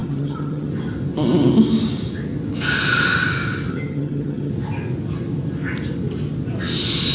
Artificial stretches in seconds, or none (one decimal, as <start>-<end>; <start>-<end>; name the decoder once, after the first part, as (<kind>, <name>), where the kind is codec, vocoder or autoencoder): 0.0-0.7 (vocoder, HiFi-GAN); 3.7-4.5